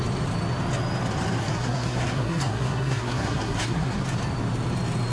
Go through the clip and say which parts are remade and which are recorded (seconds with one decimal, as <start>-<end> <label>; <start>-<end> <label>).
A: 0.0-1.4 recorded; 1.4-4.0 remade; 4.0-5.1 recorded

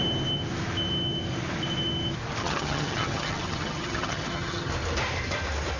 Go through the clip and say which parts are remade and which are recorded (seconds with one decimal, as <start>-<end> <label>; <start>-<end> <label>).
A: 0.0-2.4 recorded; 2.4-4.7 remade; 4.7-5.8 recorded

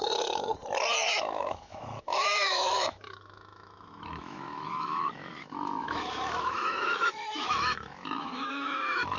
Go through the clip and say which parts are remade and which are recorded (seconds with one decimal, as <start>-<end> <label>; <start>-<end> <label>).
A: 0.0-0.5 remade; 0.5-1.1 recorded; 1.1-9.2 remade